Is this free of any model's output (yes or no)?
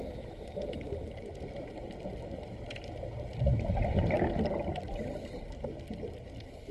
yes